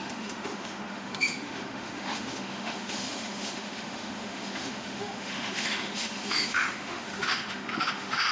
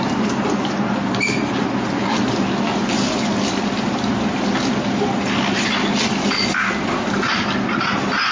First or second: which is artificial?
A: first